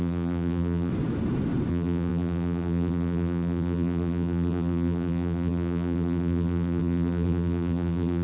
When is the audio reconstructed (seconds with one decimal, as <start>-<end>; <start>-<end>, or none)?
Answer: 0.0-0.9; 1.7-8.2